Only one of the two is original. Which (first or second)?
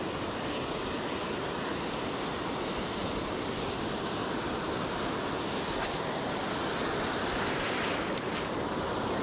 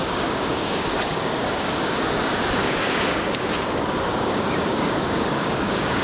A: first